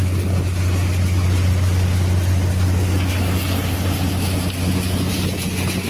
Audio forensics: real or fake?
real